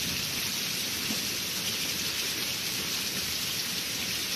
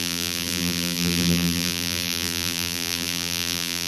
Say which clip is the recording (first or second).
first